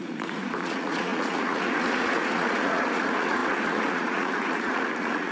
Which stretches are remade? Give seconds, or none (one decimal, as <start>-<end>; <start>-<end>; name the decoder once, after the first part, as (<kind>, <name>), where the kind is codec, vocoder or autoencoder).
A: 0.0-5.3 (vocoder, Vocos)